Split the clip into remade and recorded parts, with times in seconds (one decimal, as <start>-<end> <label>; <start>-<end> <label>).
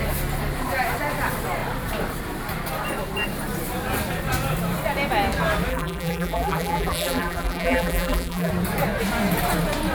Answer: 0.0-5.7 recorded; 5.7-8.5 remade; 8.5-9.9 recorded